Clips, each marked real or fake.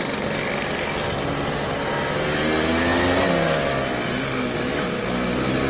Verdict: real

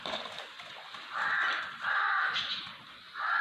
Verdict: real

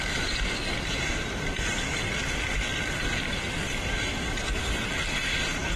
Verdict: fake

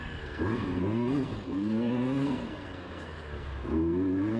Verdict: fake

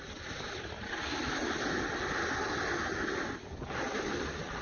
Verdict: real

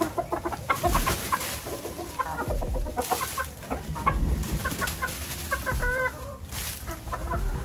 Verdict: fake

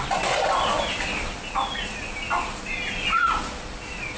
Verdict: real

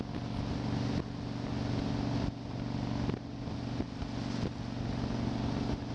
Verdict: real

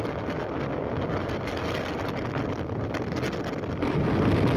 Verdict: real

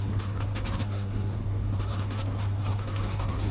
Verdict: fake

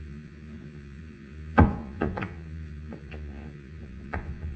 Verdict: fake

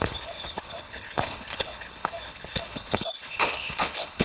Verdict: fake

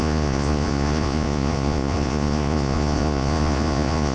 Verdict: fake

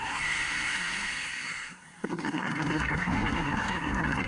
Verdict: fake